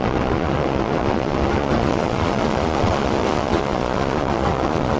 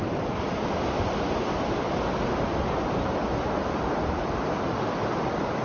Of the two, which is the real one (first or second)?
second